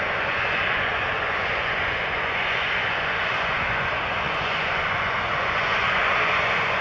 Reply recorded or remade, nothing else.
remade